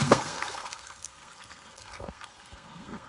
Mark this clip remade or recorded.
remade